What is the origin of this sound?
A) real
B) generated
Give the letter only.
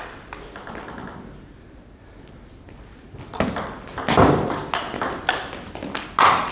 A